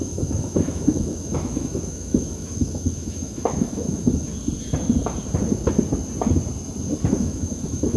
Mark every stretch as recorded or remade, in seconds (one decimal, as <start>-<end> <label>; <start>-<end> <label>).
0.0-4.3 remade; 4.3-7.1 recorded; 7.1-8.0 remade